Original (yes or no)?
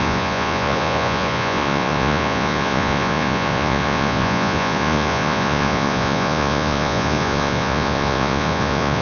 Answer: no